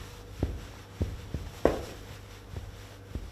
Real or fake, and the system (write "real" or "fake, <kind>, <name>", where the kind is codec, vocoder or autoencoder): real